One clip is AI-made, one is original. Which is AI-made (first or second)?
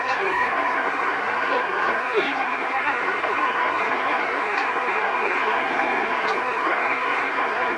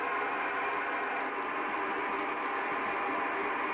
first